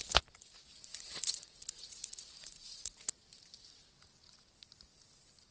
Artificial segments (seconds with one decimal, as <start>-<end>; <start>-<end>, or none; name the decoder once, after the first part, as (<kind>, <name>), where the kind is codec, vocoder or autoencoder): 0.9-3.0 (vocoder, Vocos)